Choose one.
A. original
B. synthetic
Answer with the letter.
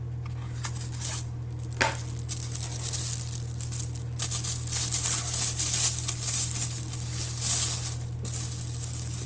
A